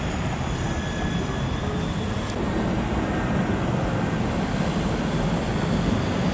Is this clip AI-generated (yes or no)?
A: no